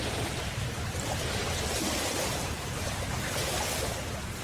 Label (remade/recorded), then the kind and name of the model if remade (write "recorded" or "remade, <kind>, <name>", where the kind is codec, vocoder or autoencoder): remade, vocoder, BigVGAN v2